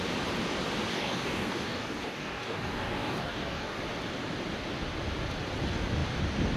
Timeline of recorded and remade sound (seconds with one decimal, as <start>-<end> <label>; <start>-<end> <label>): 0.0-0.9 recorded; 0.9-3.8 remade; 3.8-6.6 recorded